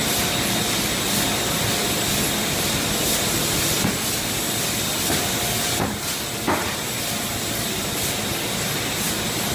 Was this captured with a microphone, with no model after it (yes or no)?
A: yes